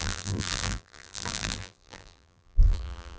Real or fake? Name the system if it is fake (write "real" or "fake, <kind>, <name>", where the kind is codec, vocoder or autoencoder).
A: fake, vocoder, BigVGAN v2